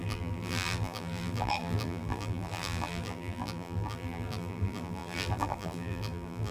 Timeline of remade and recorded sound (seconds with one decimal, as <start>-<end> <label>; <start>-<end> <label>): 0.0-6.5 remade